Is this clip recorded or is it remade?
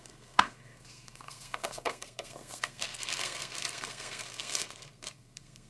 remade